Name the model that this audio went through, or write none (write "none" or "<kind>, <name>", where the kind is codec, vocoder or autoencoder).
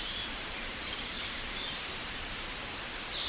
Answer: vocoder, BigVGAN v2